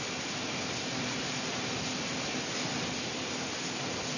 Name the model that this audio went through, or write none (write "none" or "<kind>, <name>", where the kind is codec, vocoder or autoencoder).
none